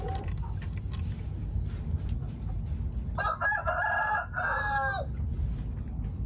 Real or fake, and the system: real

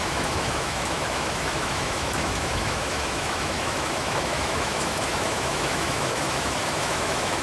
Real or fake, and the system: fake, autoencoder, DAC-VAE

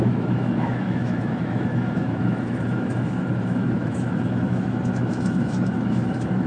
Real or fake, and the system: fake, autoencoder, DAC-VAE